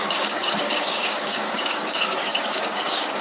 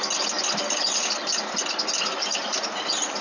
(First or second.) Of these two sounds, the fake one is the first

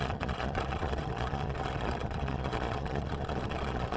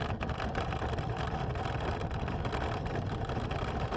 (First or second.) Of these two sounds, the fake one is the first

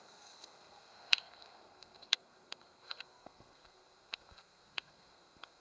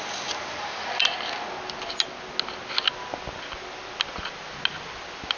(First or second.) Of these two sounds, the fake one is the first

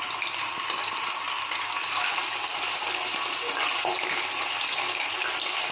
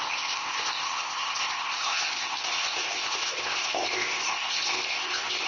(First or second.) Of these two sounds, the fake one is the second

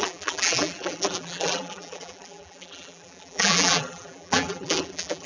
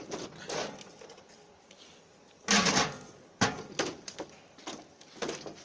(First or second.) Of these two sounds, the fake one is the first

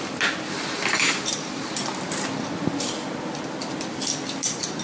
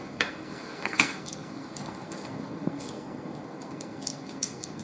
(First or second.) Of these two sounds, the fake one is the second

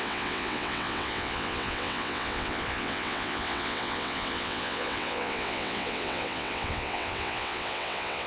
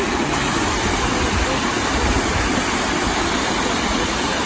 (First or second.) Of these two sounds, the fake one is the first